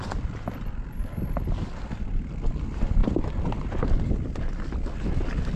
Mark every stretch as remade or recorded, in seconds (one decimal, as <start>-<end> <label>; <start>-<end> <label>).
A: 0.0-5.6 recorded